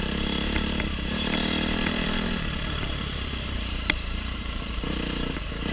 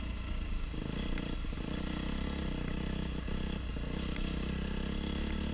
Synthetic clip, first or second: first